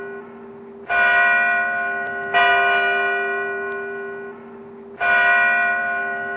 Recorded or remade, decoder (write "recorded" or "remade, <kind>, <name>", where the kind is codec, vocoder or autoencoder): recorded